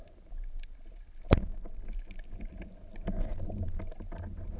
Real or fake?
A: real